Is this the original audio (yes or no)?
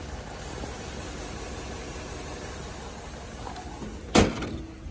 yes